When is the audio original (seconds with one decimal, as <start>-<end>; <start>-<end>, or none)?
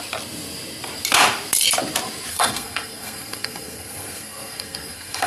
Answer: 0.0-2.3